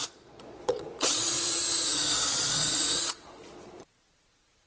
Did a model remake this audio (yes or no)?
yes